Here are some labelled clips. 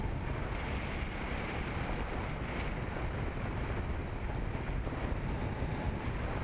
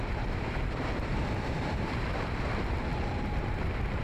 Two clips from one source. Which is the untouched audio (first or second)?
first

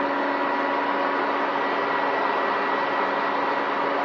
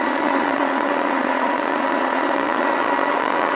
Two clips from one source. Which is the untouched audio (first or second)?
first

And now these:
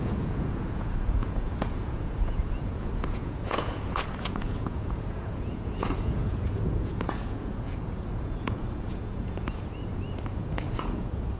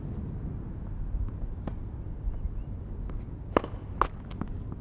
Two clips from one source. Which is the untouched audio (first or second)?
second